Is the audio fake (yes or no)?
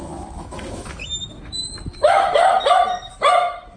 yes